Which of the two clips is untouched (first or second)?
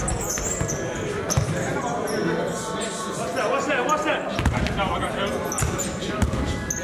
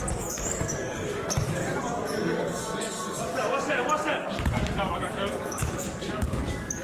first